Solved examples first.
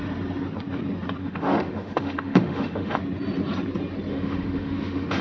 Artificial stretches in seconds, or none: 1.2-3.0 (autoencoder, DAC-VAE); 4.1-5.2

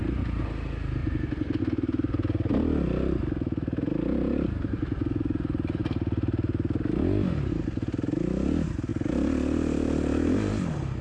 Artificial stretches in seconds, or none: none

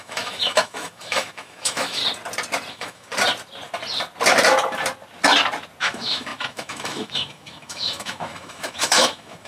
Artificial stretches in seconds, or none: 0.0-2.0 (autoencoder, DAC-VAE); 2.7-3.1; 5.8-9.5

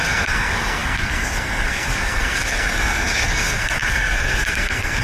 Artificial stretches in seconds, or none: 0.0-5.0 (codec, SNAC)

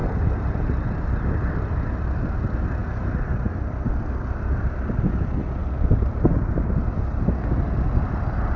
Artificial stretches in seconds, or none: 2.8-3.9 (vocoder, BigVGAN v2)

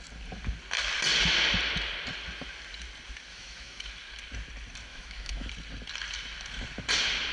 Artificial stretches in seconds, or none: 3.3-3.9 (autoencoder, DAC-VAE); 4.9-5.5